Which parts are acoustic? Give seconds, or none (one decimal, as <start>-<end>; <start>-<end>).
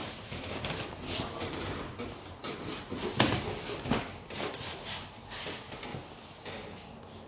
5.9-7.3